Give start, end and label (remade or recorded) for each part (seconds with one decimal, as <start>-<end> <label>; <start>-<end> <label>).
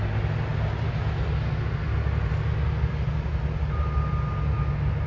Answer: 0.0-5.1 recorded